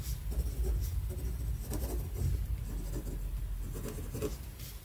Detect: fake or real real